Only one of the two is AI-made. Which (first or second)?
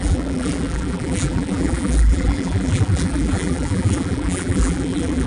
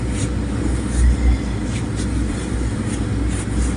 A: first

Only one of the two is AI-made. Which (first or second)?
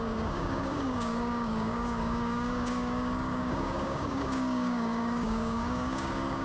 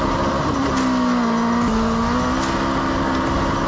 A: first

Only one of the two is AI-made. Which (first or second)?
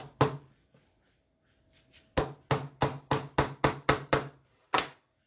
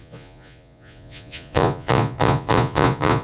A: second